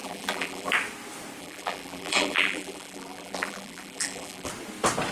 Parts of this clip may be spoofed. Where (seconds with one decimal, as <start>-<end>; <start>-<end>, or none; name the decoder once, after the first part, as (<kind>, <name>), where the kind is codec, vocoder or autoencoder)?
0.0-0.7 (vocoder, BigVGAN v2); 1.4-4.5